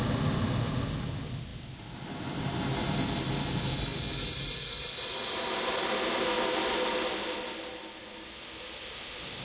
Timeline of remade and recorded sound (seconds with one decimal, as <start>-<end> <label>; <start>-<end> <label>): 0.0-9.4 recorded